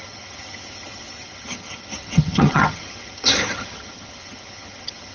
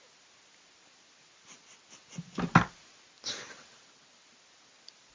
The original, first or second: second